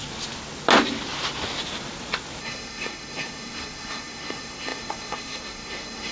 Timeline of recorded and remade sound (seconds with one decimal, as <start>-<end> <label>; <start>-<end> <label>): 0.0-2.4 recorded; 2.4-6.1 remade